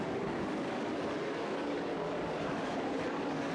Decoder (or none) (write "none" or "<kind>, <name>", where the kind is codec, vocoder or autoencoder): codec, DAC